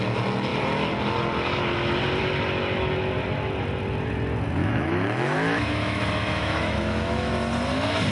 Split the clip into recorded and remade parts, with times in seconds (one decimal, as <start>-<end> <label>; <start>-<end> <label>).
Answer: 0.0-4.6 recorded; 4.6-7.3 remade; 7.3-8.1 recorded